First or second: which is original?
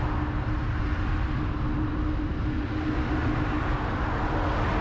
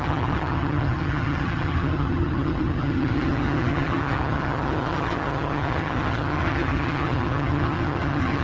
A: first